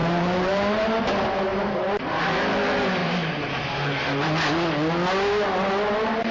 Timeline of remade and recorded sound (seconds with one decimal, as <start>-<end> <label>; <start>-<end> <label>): 0.0-1.0 remade; 1.0-1.5 recorded; 1.5-2.2 remade; 2.2-3.0 recorded; 3.0-3.6 remade; 3.6-6.3 recorded